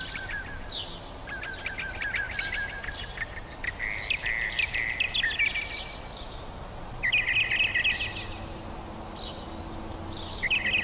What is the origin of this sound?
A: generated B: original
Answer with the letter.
B